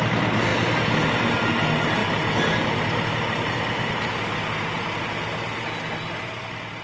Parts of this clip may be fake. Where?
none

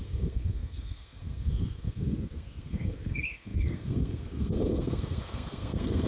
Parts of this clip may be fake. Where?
0.0-6.1 (codec, SNAC)

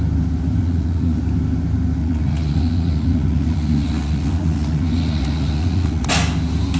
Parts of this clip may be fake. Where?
0.6-1.2 (vocoder, Vocos); 2.0-6.1

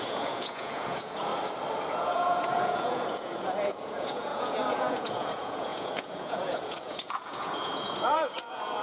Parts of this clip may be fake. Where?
0.0-1.3 (vocoder, Vocos); 1.9-8.8